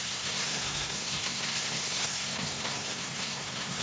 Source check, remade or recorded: remade